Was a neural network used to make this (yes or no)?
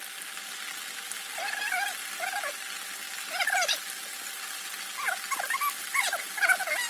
no